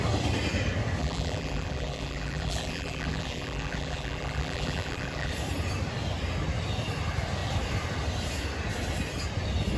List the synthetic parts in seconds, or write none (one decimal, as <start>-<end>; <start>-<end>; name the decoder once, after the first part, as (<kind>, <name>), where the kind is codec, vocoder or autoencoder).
1.0-5.3 (vocoder, BigVGAN v2)